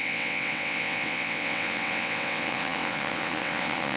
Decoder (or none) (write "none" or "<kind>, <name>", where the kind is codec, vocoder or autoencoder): vocoder, WaveNeXt